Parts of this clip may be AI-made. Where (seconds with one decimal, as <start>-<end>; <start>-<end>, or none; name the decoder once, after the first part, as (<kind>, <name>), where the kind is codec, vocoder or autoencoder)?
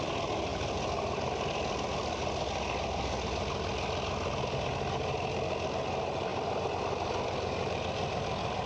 none